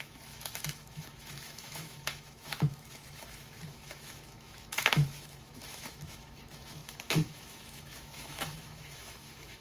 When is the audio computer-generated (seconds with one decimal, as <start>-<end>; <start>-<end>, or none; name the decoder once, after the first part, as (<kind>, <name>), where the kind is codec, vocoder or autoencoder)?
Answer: 0.0-9.6 (autoencoder, DAC-VAE)